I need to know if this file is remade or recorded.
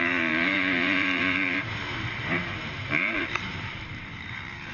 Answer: remade